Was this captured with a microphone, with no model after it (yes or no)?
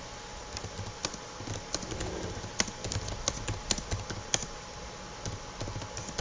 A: yes